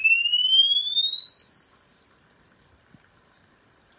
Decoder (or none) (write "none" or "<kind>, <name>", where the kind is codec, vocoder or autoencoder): none